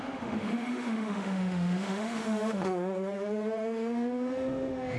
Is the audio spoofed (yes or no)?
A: yes